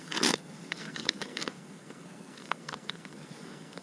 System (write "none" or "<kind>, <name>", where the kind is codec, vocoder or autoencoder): codec, SNAC